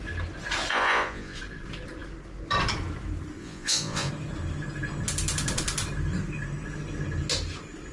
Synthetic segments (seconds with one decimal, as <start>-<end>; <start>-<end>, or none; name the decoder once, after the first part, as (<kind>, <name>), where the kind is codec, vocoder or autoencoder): 0.7-1.4 (vocoder, Vocos); 3.4-4.1

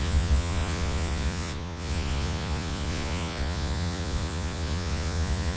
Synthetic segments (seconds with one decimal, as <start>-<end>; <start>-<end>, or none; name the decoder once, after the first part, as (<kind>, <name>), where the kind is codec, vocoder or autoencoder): 0.0-5.6 (vocoder, Vocos)